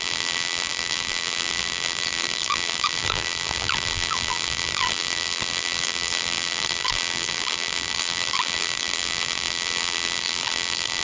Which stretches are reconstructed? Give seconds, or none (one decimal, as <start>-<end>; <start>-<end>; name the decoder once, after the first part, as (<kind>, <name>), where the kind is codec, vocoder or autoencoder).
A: 0.0-11.0 (vocoder, BigVGAN v2)